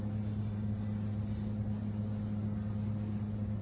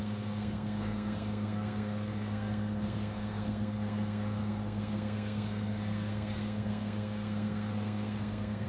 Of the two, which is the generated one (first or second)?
second